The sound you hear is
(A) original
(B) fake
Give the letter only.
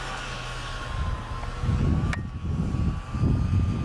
A